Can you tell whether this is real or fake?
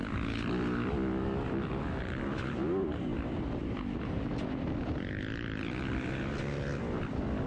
real